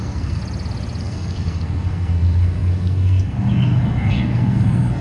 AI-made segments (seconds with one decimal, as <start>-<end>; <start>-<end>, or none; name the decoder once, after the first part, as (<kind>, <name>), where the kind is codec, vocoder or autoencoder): 0.0-0.4 (codec, SNAC); 1.0-5.0